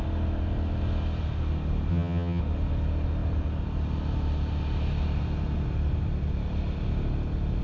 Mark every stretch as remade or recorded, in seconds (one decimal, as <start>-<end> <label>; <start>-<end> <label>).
0.0-1.9 recorded; 1.9-2.4 remade; 2.4-7.6 recorded